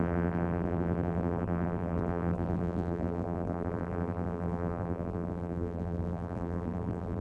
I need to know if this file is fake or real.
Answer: fake